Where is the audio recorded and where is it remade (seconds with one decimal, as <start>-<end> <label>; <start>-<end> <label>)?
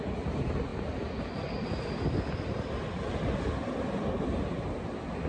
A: 0.0-5.3 recorded